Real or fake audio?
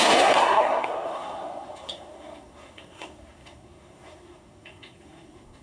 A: fake